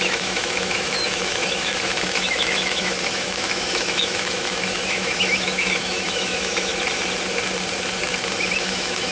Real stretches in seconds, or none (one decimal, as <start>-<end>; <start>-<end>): 6.7-8.6